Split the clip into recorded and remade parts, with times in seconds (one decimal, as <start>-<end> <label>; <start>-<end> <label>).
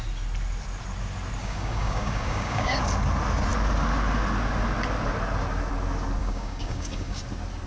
0.0-1.4 recorded; 1.4-2.8 remade; 2.8-6.2 recorded; 6.2-7.2 remade; 7.2-7.7 recorded